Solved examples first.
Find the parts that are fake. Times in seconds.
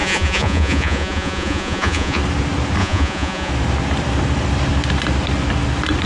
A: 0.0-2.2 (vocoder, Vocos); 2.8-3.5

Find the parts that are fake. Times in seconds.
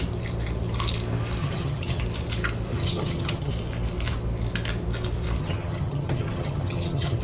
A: 1.4-2.0 (vocoder, HiFi-GAN); 2.7-3.5; 5.4-7.2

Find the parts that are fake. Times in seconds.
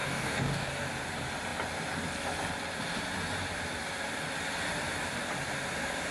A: 0.0-0.7 (codec, DAC)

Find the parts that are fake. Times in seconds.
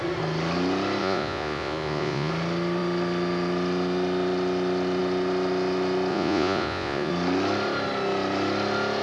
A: 1.0-2.3 (vocoder, Vocos); 6.1-7.1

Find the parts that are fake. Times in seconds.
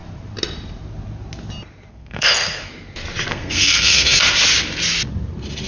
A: 1.9-2.7 (codec, SNAC); 3.3-4.2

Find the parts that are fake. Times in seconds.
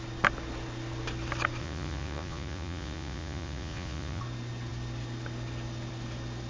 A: 1.6-4.2 (vocoder, Vocos)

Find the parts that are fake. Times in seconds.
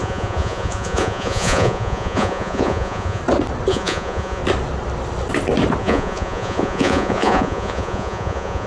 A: 0.0-3.2 (vocoder, Vocos); 3.7-4.4; 5.8-8.7